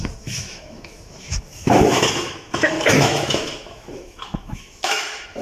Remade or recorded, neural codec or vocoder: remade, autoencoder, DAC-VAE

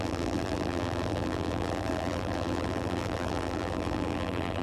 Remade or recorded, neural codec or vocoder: remade, vocoder, BigVGAN v2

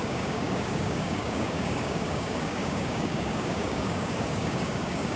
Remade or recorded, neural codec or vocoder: remade, codec, DAC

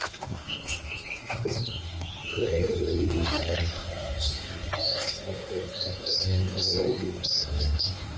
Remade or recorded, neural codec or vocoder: remade, codec, SNAC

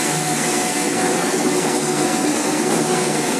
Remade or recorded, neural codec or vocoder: remade, codec, SNAC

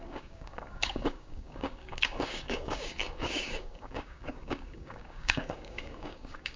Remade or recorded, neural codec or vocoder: remade, codec, DAC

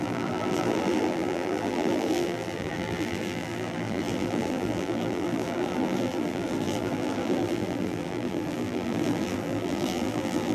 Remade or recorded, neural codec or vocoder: remade, vocoder, BigVGAN v2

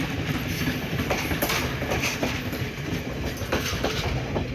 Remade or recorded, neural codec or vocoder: recorded